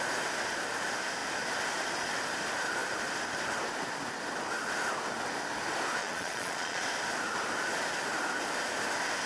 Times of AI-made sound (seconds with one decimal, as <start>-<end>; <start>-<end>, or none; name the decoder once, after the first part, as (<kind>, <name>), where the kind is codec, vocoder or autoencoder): 6.0-6.8 (vocoder, Vocos)